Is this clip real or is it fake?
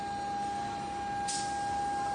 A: real